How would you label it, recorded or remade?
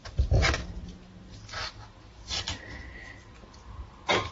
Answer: recorded